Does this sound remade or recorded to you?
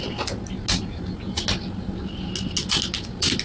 recorded